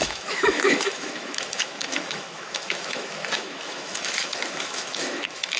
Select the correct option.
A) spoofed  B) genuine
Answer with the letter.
A